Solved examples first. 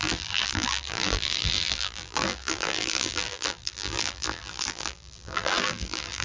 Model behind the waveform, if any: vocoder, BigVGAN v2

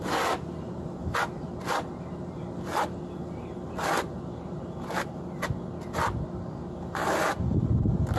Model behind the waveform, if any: none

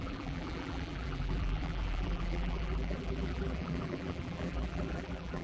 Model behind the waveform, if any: vocoder, BigVGAN v2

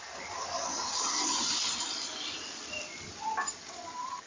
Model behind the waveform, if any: none